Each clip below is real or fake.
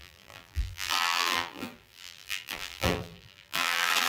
fake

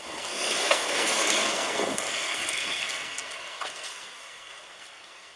fake